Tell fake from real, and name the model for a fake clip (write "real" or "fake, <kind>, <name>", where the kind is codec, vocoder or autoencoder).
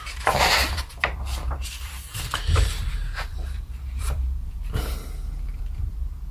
fake, vocoder, BigVGAN v2